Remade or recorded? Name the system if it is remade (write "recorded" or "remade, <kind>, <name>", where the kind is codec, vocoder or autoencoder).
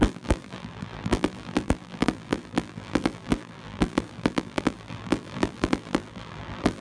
remade, vocoder, BigVGAN v2